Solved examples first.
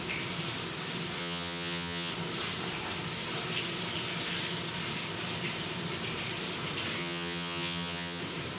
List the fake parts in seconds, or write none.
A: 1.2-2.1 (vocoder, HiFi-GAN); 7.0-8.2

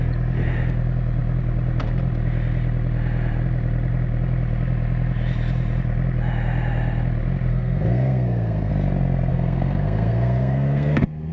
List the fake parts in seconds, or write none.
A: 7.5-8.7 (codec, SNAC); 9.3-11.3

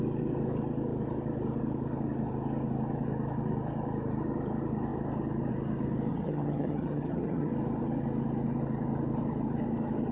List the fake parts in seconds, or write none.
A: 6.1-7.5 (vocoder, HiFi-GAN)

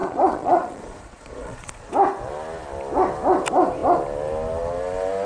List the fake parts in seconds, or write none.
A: 0.0-1.9 (vocoder, Vocos)